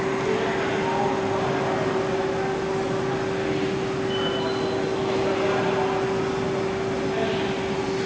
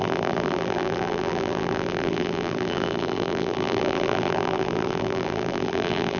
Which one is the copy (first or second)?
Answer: second